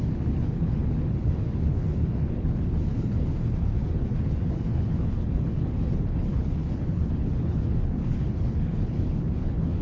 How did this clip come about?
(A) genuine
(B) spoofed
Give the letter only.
B